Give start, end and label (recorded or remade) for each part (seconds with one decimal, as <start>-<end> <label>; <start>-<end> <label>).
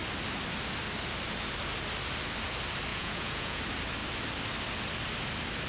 0.0-2.9 recorded; 2.9-3.6 remade; 3.6-5.7 recorded